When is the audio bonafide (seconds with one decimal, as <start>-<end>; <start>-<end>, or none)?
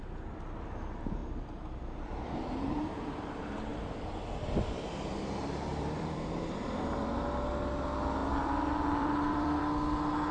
0.0-1.2; 2.9-3.7; 4.3-5.7; 7.1-8.2; 9.6-10.3